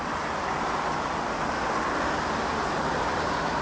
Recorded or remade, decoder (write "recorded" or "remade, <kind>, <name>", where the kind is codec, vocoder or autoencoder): recorded